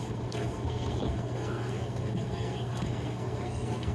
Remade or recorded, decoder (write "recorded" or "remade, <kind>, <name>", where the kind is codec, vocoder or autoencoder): remade, codec, SNAC